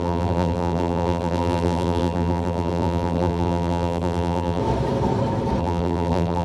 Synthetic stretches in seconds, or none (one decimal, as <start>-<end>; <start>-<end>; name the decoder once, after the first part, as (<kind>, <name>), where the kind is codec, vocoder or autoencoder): 0.0-4.6 (vocoder, BigVGAN v2); 5.6-6.4